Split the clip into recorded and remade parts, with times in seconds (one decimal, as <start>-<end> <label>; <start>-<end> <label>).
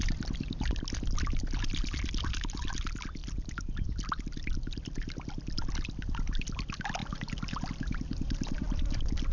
0.0-9.3 recorded